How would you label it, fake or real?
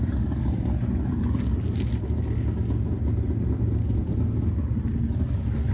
real